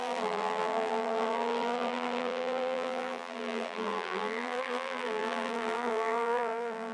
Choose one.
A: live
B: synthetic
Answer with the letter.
B